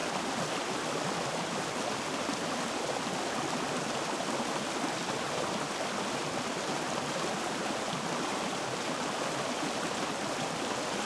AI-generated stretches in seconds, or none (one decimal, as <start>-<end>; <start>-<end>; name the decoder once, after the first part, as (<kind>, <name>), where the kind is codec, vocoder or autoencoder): none